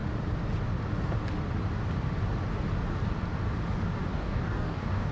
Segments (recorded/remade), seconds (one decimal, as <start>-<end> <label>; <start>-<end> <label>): 0.0-4.1 recorded; 4.1-5.1 remade